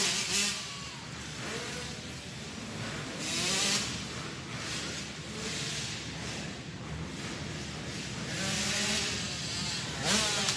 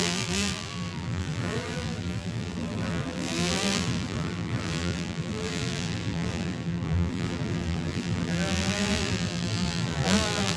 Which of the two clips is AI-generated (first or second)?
second